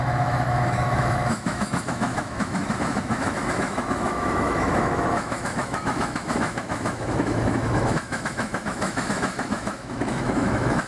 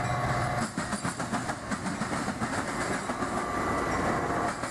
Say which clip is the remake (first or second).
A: first